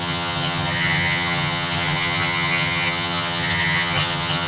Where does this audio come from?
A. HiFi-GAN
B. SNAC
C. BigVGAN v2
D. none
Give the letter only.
A